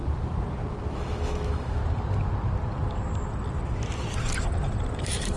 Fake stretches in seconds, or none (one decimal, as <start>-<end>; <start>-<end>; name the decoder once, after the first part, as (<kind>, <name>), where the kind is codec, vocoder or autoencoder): 0.9-1.8 (autoencoder, DAC-VAE); 5.0-5.4